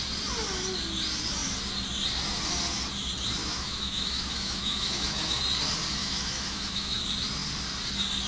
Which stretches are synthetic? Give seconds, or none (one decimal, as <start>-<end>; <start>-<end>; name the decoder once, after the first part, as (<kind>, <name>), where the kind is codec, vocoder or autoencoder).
3.4-5.4 (autoencoder, DAC-VAE); 6.0-7.0